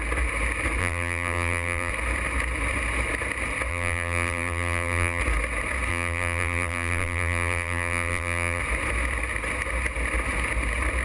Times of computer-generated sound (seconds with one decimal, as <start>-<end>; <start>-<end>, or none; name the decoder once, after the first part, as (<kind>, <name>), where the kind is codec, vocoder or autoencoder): 0.8-1.9 (vocoder, BigVGAN v2); 3.7-5.2; 5.9-8.6